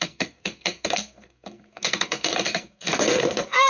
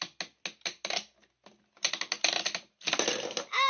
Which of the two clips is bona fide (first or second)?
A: second